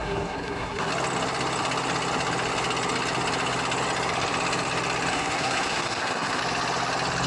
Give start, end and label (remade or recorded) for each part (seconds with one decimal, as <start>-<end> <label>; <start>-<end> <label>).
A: 0.0-0.9 remade; 0.9-5.1 recorded; 5.1-6.4 remade; 6.4-7.3 recorded